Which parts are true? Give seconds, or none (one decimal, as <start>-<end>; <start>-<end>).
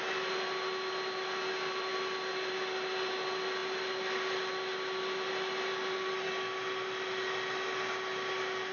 0.0-8.7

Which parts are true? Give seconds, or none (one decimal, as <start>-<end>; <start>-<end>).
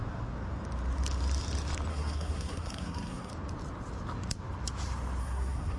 0.0-1.9; 3.3-5.2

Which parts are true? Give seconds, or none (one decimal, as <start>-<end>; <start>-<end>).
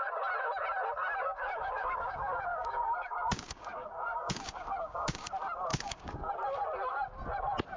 0.0-1.2; 5.3-5.7; 6.3-7.8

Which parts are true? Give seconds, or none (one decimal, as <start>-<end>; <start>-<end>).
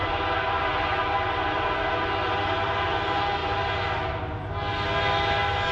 0.0-5.7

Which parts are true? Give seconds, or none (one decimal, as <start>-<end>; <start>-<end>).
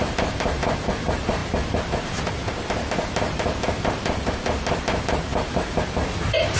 none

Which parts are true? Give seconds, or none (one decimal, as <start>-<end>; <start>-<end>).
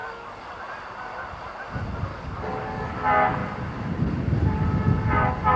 0.6-2.1; 2.9-5.6